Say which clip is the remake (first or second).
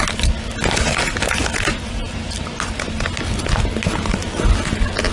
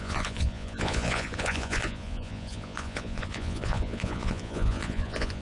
second